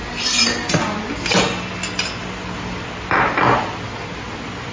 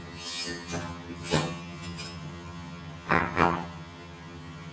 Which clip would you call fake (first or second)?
second